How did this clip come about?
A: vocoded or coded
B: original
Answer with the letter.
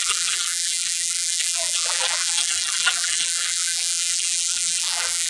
A